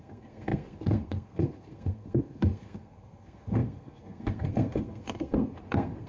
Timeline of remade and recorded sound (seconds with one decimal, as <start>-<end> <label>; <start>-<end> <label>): 0.0-6.1 remade